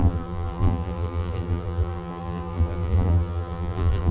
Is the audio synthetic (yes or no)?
yes